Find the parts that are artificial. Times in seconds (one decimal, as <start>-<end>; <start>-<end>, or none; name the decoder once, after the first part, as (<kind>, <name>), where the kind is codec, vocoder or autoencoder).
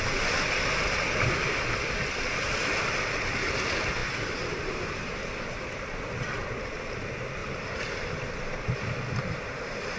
4.0-5.1 (vocoder, BigVGAN v2); 7.4-10.0